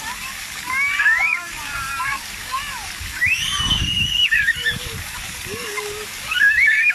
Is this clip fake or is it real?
fake